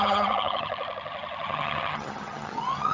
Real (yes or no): no